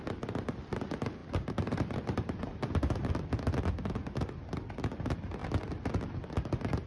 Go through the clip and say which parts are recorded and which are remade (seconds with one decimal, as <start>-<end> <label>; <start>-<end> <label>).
0.0-1.2 recorded; 1.2-3.1 remade; 3.1-6.9 recorded